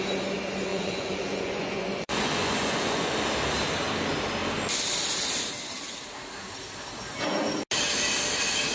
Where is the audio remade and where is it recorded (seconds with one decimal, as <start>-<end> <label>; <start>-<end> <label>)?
0.0-0.7 recorded; 0.7-3.1 remade; 3.1-8.7 recorded